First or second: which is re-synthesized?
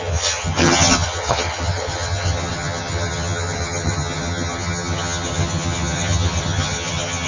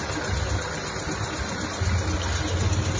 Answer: first